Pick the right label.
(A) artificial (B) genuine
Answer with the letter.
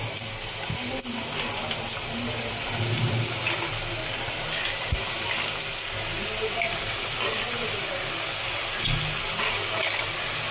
B